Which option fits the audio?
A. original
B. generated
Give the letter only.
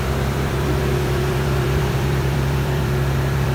B